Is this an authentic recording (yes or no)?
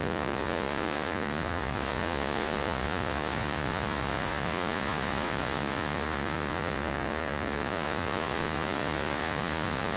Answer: no